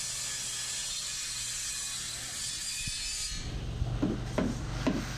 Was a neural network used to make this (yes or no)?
no